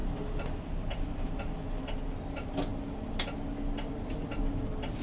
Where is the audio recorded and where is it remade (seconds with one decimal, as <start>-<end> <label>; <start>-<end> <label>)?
0.0-5.0 recorded